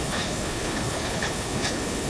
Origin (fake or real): fake